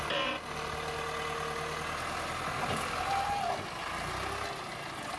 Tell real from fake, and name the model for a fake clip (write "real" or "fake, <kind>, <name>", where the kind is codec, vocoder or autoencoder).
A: real